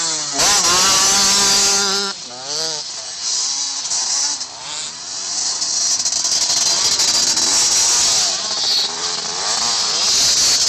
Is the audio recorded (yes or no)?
yes